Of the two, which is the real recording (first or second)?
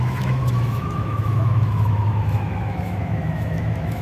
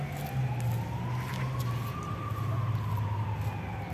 second